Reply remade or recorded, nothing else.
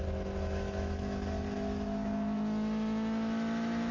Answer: remade